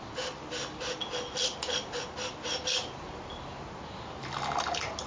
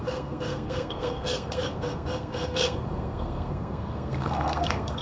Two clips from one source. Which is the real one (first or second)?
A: first